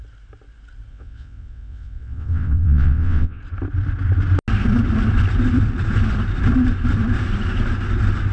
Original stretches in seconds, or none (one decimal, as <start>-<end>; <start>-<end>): 0.0-0.9; 3.4-8.3